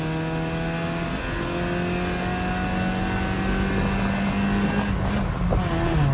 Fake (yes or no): no